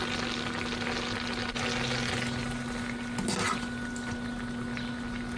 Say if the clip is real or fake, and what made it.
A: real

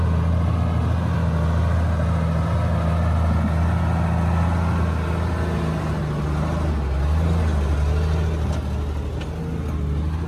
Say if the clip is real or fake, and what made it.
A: real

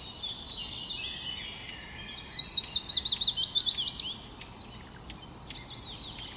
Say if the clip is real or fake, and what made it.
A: real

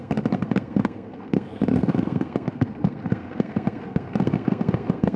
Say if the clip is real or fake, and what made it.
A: fake, codec, SNAC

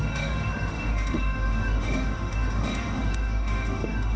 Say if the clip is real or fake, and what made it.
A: fake, autoencoder, DAC-VAE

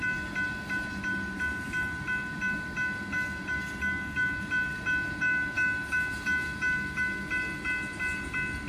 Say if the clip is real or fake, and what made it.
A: real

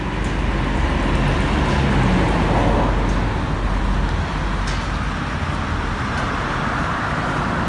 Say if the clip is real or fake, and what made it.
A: real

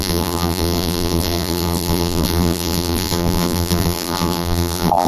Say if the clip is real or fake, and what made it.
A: fake, vocoder, BigVGAN v2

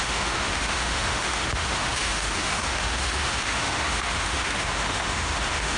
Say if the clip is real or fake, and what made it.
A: fake, autoencoder, DAC-VAE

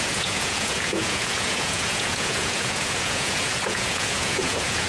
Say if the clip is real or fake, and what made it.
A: fake, vocoder, Vocos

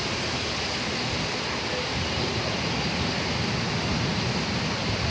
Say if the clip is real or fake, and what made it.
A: real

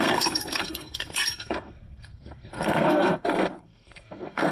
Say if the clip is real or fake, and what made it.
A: fake, codec, SNAC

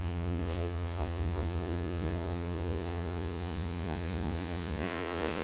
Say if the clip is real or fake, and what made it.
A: fake, vocoder, Vocos